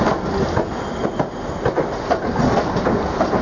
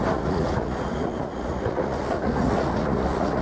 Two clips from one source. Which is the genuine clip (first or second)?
first